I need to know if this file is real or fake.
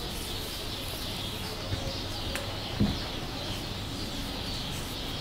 real